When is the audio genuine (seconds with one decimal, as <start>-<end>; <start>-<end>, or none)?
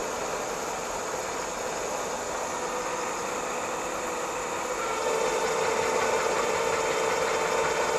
0.0-4.7